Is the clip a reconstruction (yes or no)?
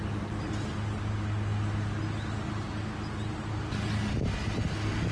no